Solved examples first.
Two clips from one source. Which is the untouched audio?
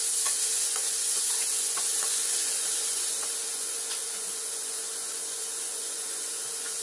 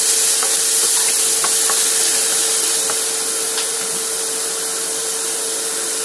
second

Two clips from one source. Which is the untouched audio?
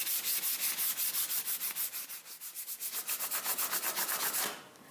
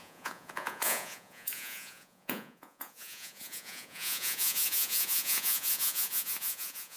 first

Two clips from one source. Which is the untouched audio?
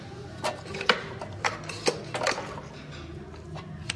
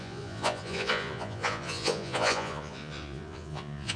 first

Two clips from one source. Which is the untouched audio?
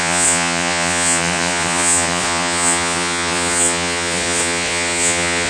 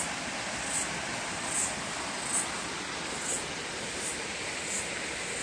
second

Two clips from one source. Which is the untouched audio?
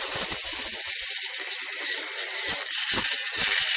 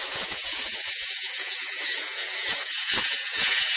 first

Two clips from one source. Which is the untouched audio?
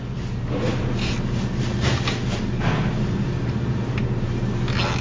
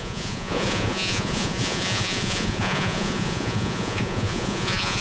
first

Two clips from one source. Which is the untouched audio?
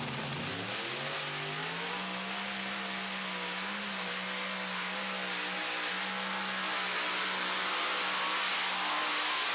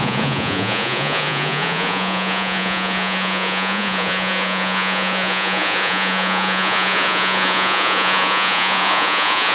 first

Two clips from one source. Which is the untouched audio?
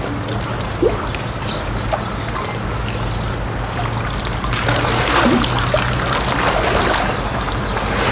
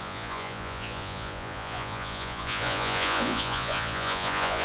first